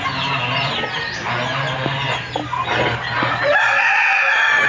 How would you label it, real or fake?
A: real